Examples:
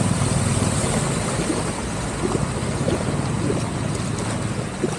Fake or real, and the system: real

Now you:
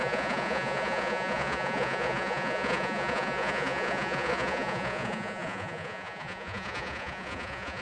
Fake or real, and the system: fake, vocoder, Vocos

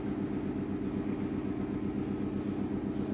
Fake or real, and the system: real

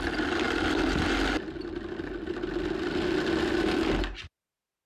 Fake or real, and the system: real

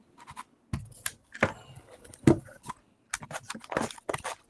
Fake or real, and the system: real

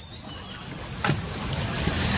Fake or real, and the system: real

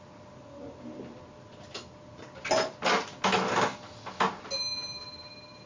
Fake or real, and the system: real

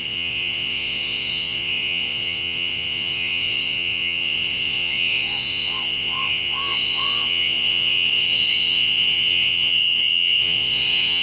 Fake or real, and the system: fake, vocoder, Vocos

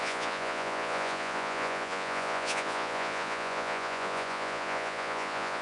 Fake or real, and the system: fake, vocoder, Vocos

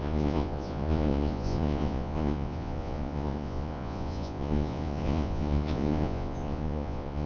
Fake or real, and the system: fake, vocoder, Vocos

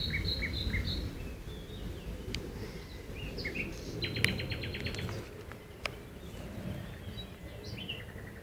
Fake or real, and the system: real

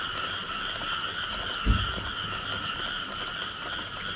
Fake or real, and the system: real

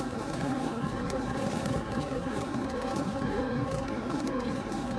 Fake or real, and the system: fake, codec, SNAC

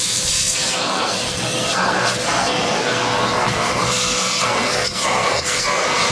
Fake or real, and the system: fake, codec, SNAC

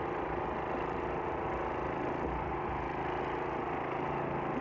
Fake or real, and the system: real